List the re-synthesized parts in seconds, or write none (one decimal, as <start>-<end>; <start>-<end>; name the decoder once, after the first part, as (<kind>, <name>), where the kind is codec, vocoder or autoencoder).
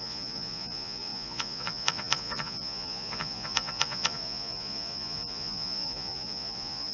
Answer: 0.0-6.9 (vocoder, Vocos)